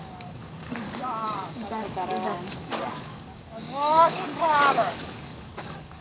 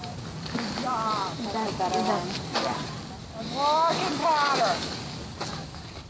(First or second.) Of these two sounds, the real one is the second